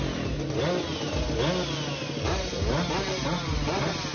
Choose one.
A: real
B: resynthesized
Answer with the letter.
A